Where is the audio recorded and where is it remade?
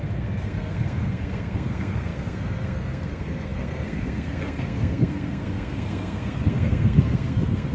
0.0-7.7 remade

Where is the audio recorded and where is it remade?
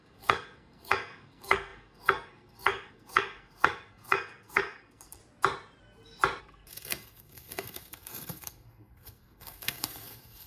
0.0-5.2 remade; 5.2-6.4 recorded; 6.4-10.5 remade